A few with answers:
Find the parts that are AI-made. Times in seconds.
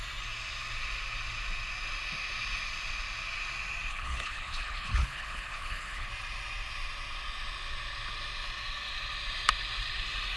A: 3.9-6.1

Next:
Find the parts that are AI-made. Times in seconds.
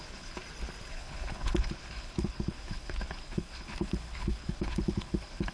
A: 0.0-0.4; 0.9-5.5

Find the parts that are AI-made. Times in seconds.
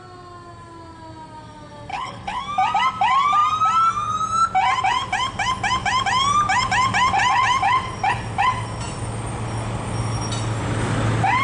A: 1.9-2.4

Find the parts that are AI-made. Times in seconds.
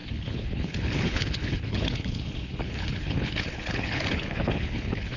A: 0.0-5.2